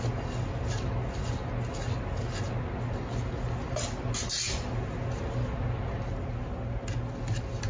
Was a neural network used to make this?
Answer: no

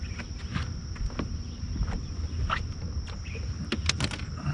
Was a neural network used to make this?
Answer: no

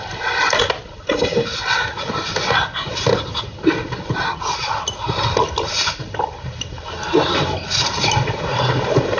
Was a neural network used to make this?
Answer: no